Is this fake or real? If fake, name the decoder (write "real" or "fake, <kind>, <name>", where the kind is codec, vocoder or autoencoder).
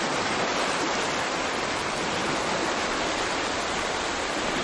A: real